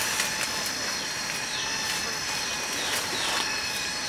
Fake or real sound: real